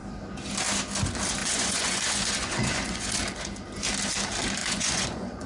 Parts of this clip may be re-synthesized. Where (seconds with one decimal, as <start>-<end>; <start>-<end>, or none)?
1.4-3.4; 4.6-5.5